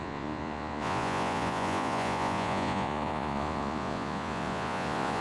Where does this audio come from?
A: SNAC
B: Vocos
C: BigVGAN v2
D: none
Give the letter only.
B